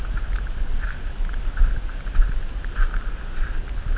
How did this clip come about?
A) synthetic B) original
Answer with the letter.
B